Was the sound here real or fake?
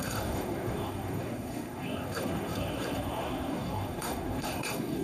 fake